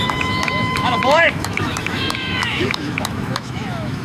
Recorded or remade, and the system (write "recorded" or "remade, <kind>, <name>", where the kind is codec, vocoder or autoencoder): remade, autoencoder, DAC-VAE